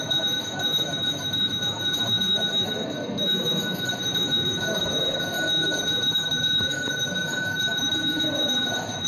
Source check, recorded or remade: remade